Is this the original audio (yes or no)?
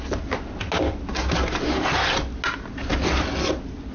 yes